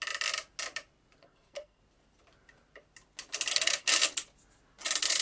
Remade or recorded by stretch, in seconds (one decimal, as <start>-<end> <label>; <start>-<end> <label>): 0.0-1.2 recorded; 1.2-1.8 remade; 1.8-3.5 recorded; 3.5-4.0 remade; 4.0-5.2 recorded